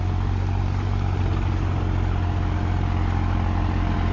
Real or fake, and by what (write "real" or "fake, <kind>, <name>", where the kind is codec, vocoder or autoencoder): real